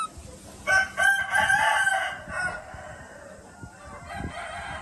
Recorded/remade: recorded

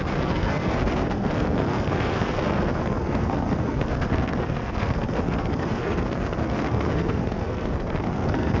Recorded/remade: remade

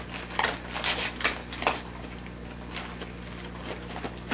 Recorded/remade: recorded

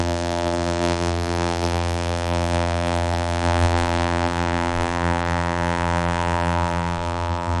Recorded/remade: remade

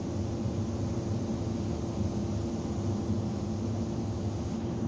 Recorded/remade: recorded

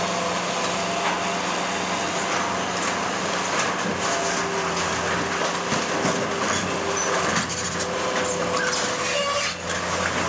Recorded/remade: recorded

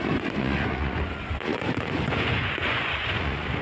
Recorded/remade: remade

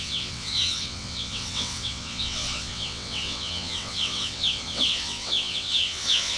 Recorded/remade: remade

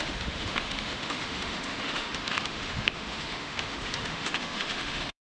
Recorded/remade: remade